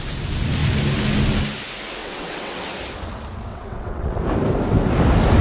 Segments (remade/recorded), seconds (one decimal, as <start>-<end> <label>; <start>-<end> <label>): 0.0-2.0 recorded; 2.0-2.6 remade; 2.6-3.5 recorded; 3.5-4.2 remade; 4.2-5.4 recorded

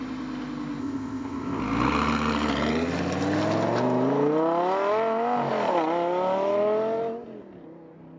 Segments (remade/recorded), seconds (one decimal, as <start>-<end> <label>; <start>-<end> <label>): 0.0-0.8 recorded; 0.8-1.6 remade; 1.6-8.2 recorded

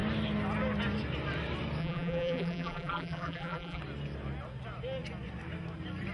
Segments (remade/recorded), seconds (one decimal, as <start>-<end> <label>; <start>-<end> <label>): 0.0-1.8 recorded; 1.8-3.8 remade; 3.8-6.1 recorded

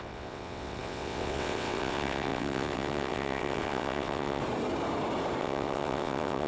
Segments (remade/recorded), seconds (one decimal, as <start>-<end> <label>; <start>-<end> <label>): 0.0-4.4 remade; 4.4-5.4 recorded; 5.4-6.5 remade

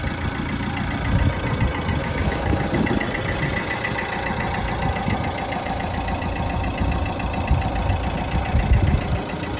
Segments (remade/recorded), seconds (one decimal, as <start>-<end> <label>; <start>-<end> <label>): 0.0-2.0 recorded; 2.0-2.8 remade; 2.8-9.6 recorded

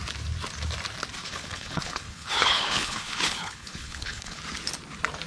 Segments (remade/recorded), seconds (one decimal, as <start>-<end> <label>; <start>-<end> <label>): 0.0-1.2 recorded; 1.2-4.4 remade; 4.4-5.3 recorded

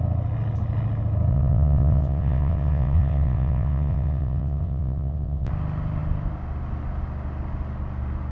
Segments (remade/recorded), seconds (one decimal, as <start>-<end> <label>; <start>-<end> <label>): 0.0-1.3 recorded; 1.3-5.5 remade; 5.5-8.3 recorded